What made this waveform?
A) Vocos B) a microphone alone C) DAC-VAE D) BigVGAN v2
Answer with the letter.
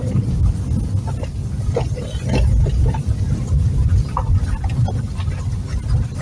B